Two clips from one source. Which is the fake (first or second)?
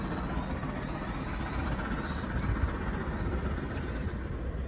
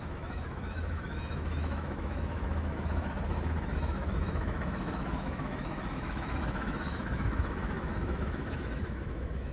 second